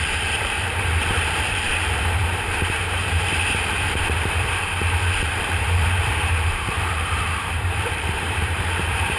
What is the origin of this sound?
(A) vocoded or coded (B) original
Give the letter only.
A